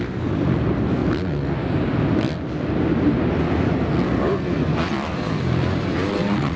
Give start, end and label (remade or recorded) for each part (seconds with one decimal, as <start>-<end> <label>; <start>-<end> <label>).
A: 0.0-6.1 recorded; 6.1-6.6 remade